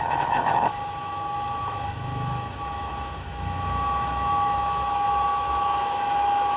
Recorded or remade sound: remade